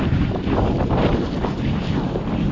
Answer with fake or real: real